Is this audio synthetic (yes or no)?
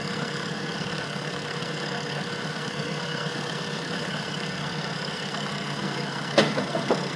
yes